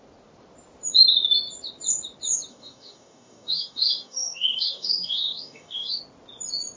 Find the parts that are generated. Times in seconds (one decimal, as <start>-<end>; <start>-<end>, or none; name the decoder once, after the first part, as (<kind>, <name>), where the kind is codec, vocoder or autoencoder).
2.5-6.0 (codec, DAC)